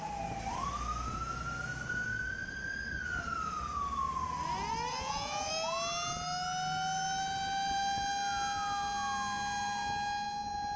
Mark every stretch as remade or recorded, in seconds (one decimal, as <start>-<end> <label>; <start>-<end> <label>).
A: 0.0-4.9 recorded; 4.9-5.5 remade; 5.5-10.8 recorded